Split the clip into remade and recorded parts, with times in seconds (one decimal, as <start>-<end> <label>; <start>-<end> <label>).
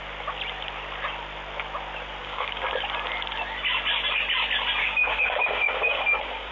0.0-2.2 recorded; 2.2-2.7 remade; 2.7-4.8 recorded; 4.8-6.5 remade